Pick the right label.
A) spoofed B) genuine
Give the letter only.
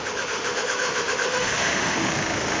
A